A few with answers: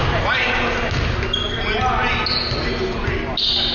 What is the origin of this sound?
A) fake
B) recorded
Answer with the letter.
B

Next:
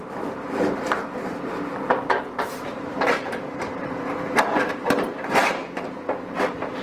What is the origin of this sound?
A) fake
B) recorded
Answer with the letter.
A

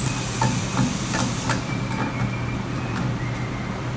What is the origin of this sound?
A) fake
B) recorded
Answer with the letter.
A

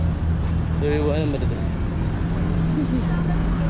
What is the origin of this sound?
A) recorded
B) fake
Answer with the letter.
A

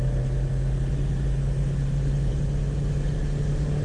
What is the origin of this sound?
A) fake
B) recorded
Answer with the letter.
B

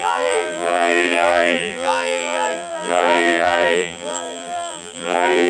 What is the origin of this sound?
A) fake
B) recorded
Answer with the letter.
A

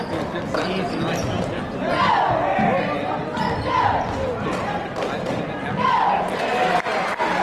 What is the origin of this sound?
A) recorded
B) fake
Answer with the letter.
A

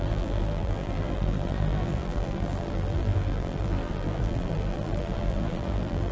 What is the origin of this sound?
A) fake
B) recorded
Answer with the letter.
A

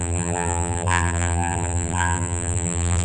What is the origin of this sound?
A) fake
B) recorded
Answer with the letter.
A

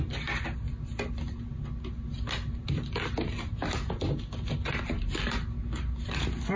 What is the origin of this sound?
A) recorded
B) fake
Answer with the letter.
A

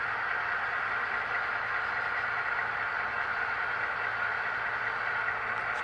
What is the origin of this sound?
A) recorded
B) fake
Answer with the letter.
A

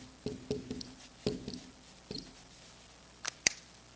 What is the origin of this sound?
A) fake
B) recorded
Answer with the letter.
A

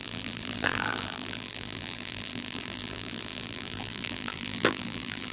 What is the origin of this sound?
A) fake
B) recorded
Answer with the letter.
A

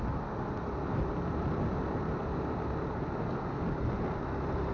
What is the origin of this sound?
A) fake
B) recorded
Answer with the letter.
B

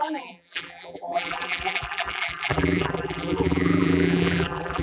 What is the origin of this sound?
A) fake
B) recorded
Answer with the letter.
A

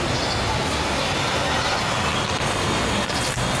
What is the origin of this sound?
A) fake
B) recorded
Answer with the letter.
B